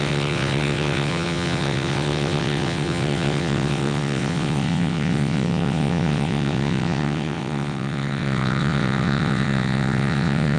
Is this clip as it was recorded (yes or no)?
no